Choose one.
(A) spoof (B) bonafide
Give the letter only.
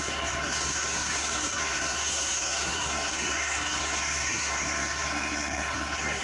A